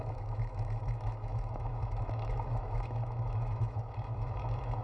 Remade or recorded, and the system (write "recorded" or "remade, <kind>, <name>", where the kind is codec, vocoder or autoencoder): remade, autoencoder, DAC-VAE